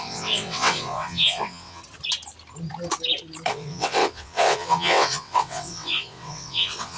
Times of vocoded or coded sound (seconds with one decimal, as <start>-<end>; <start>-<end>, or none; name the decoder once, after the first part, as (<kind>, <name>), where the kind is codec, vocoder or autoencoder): 0.0-1.8 (vocoder, WaveNeXt); 3.5-7.0

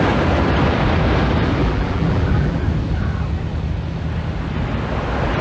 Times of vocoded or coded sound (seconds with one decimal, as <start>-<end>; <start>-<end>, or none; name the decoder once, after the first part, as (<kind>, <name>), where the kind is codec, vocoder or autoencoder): 1.6-2.6 (vocoder, BigVGAN v2)

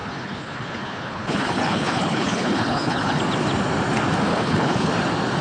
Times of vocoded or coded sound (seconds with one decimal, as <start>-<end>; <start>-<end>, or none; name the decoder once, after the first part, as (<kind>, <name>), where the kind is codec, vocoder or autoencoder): 0.0-3.2 (codec, HILCodec); 4.3-4.9